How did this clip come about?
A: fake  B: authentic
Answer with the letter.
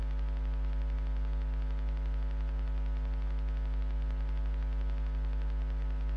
B